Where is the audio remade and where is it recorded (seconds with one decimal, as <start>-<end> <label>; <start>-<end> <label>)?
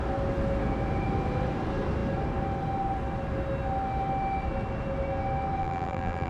0.0-5.6 recorded; 5.6-6.3 remade